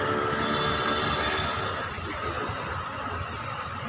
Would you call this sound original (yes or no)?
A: yes